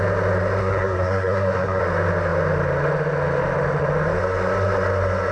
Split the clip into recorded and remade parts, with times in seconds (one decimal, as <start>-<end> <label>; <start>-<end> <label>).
0.0-0.6 recorded; 0.6-1.8 remade; 1.8-5.3 recorded